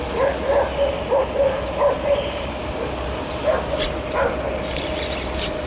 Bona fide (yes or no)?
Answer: yes